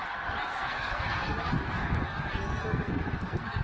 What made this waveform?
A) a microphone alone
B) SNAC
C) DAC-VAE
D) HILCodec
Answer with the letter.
B